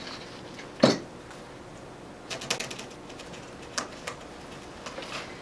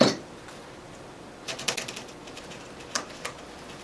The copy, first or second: second